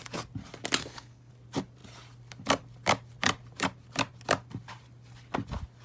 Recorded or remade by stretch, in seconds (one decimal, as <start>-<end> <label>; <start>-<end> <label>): 0.0-0.8 recorded; 0.8-1.3 remade; 1.3-5.8 recorded